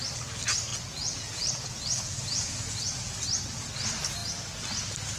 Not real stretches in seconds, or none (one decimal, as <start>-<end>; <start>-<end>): 0.7-3.1